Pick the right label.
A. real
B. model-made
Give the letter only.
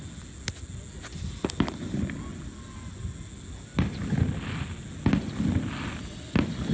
A